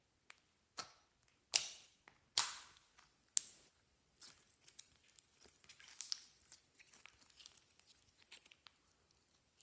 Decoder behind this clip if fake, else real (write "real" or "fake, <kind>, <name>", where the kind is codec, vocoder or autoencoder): real